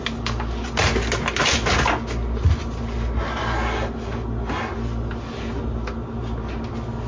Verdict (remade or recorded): recorded